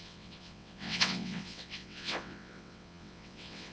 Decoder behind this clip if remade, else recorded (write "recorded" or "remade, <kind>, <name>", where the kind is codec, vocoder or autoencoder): remade, vocoder, WaveNeXt